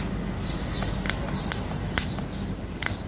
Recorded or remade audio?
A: recorded